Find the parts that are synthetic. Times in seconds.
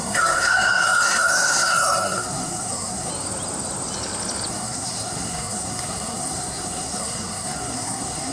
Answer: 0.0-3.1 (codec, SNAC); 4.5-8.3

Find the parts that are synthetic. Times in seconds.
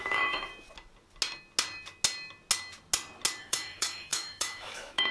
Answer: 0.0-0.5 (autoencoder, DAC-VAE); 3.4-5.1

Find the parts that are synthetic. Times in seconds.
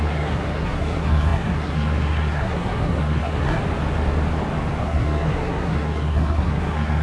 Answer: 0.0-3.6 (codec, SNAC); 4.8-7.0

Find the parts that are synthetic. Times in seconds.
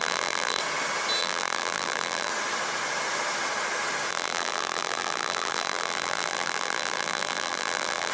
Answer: 0.0-0.6 (vocoder, BigVGAN v2); 1.2-2.3; 4.1-8.1